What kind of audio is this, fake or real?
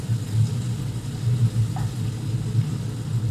real